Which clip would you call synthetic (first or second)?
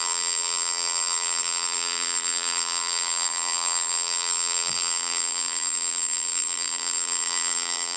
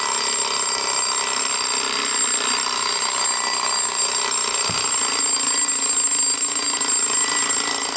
first